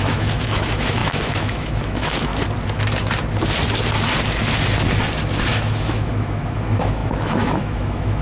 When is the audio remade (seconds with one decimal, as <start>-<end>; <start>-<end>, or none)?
0.0-2.3; 5.5-8.2

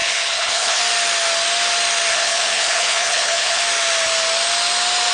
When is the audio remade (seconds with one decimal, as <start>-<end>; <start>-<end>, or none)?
0.0-0.8; 2.1-3.6

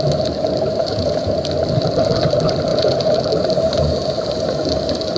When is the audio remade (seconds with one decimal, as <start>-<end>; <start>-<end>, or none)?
0.8-1.3; 2.7-3.2

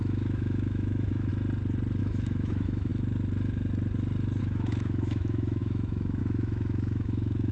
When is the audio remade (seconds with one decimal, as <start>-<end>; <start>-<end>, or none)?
0.0-1.3; 2.0-2.9; 4.4-7.5

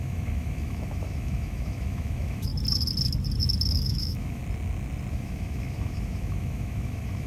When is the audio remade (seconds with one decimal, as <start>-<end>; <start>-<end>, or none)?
0.0-2.5; 3.7-4.4; 5.1-7.3

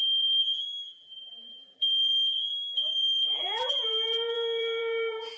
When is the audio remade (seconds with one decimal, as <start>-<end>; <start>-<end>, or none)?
0.0-5.4

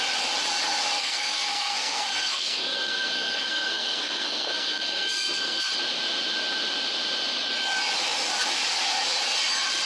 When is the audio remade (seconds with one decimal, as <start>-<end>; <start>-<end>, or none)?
1.0-5.7